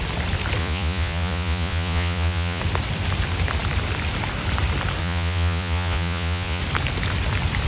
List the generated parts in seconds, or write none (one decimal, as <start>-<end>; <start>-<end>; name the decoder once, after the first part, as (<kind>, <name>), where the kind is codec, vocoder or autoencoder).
0.6-2.6 (vocoder, Vocos); 5.0-6.6

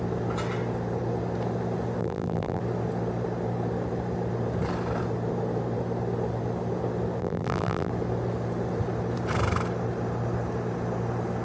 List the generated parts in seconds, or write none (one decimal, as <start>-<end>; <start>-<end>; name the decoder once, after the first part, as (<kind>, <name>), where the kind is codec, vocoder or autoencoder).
2.0-2.6 (vocoder, BigVGAN v2); 7.2-7.9

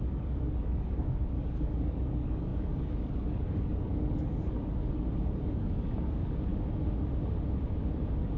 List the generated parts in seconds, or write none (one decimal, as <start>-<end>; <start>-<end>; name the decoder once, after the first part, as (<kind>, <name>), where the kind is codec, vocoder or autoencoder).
0.0-6.5 (codec, DAC)

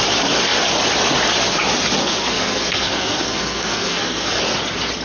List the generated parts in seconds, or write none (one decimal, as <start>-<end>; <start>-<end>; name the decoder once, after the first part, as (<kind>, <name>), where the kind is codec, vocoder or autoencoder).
2.0-4.4 (codec, SNAC)

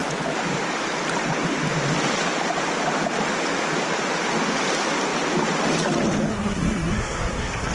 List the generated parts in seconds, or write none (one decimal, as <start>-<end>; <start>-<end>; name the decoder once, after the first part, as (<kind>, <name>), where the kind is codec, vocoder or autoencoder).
6.3-7.7 (codec, SNAC)

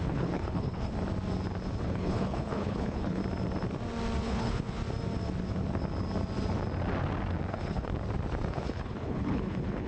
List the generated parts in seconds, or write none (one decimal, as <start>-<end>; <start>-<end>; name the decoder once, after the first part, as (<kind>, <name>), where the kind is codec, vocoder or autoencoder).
0.0-0.9 (codec, HILCodec); 1.8-3.2; 4.2-4.8; 7.5-7.9; 8.5-9.9